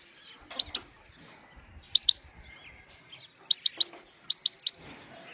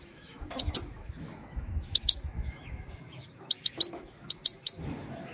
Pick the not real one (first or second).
second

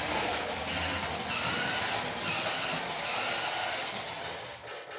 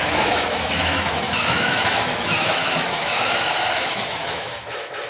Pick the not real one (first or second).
second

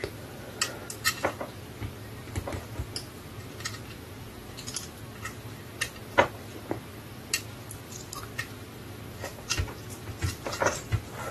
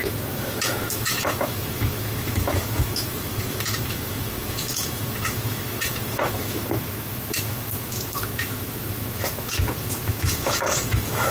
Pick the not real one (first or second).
second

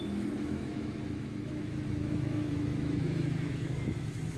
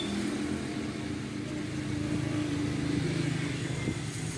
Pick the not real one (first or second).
first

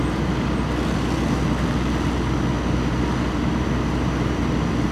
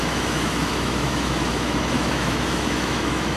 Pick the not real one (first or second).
second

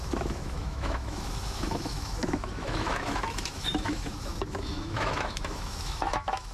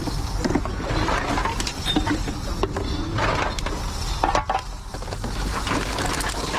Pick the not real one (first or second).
first